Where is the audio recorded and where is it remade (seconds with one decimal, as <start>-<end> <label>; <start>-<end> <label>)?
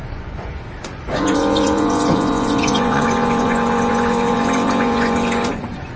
0.0-6.0 remade